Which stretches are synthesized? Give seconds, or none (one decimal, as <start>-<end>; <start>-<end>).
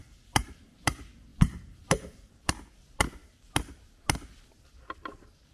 0.0-0.9; 1.3-2.5